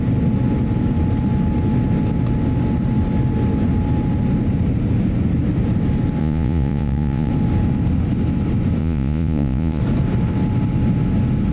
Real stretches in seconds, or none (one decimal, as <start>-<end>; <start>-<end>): 0.0-6.2; 7.3-8.8; 9.8-11.5